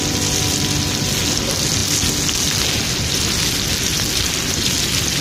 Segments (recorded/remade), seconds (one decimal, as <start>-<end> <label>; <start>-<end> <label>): 0.0-5.2 recorded